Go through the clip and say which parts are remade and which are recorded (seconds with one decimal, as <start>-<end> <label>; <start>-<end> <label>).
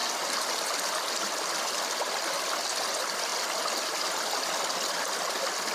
0.0-5.7 recorded